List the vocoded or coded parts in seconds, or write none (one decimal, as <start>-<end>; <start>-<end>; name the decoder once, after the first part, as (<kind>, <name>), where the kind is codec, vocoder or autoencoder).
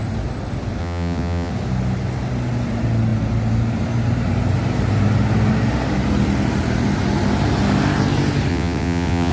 0.8-1.5 (vocoder, WaveNeXt); 8.5-9.3